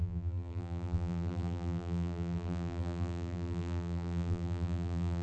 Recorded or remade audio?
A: remade